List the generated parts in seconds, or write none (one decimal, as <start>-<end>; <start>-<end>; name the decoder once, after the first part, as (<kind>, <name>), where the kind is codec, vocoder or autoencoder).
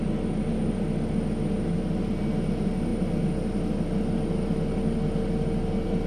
none